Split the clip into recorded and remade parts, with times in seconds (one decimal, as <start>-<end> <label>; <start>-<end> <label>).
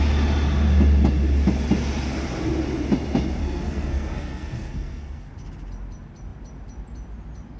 0.0-3.4 recorded; 3.4-5.3 remade; 5.3-7.6 recorded